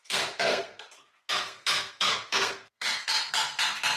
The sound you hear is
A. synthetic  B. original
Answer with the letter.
A